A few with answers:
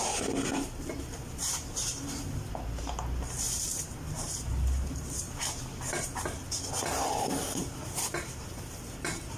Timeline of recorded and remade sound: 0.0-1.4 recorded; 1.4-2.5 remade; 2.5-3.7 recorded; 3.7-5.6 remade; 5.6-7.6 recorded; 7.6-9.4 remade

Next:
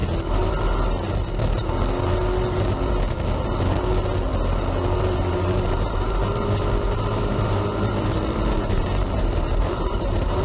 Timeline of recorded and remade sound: 0.0-5.0 recorded; 5.0-10.4 remade

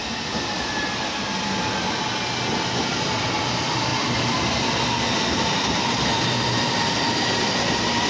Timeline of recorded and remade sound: 0.0-0.8 remade; 0.8-6.1 recorded; 6.1-7.2 remade; 7.2-8.1 recorded